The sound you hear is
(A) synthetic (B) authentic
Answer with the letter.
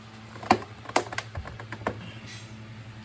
B